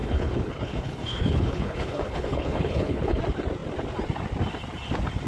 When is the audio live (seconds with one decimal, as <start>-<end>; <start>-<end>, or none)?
3.2-5.3